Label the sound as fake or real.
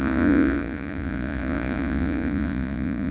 fake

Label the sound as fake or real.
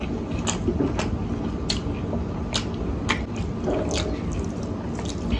real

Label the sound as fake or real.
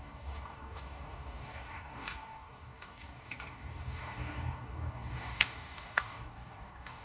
fake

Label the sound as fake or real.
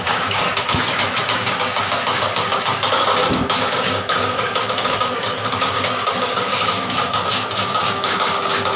fake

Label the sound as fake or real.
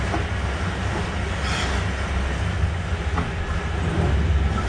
real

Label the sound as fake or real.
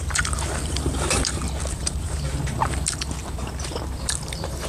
fake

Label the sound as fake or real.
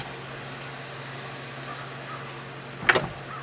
real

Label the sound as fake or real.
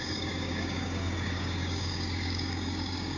fake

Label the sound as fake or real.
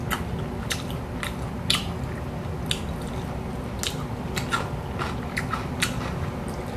real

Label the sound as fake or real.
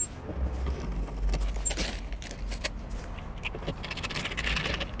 real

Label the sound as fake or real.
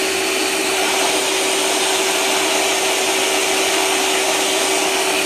real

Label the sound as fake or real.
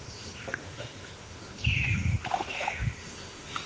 fake